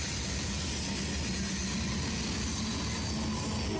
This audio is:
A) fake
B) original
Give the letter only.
B